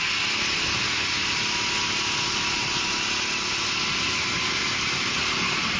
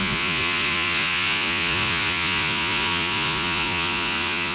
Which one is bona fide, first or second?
first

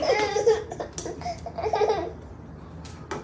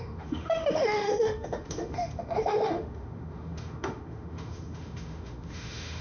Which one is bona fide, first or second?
first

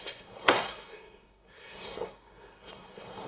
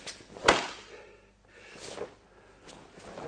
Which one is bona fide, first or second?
second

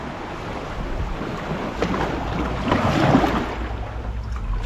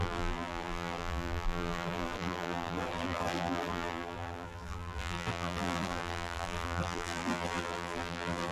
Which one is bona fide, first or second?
first